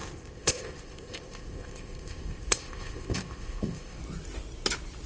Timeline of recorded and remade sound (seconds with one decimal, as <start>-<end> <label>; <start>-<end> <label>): 0.0-4.0 remade; 4.0-5.1 recorded